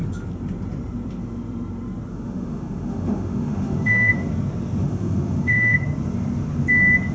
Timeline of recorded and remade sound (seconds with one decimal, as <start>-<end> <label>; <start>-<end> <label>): 0.0-2.1 recorded; 2.1-4.3 remade; 4.3-4.8 recorded; 4.8-5.8 remade; 5.8-7.1 recorded